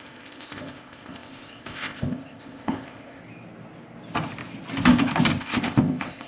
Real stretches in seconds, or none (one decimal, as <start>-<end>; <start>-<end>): 3.2-5.4